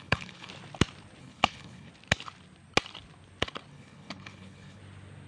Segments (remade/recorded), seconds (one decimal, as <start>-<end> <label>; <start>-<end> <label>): 0.0-0.5 remade; 0.5-1.2 recorded; 1.2-1.9 remade; 1.9-3.7 recorded; 3.7-4.8 remade; 4.8-5.3 recorded